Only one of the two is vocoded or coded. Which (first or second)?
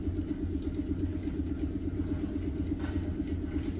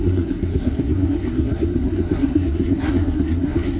second